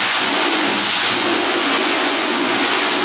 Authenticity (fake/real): fake